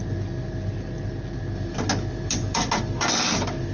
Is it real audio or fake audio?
real